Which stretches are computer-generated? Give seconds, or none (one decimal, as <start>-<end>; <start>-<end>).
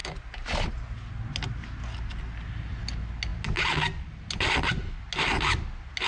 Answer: 0.0-0.7